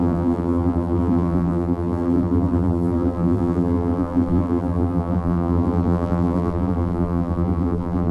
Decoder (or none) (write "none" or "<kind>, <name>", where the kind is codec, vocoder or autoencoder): vocoder, BigVGAN v2